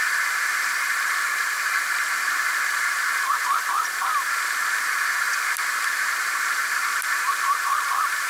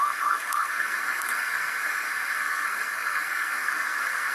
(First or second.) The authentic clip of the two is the first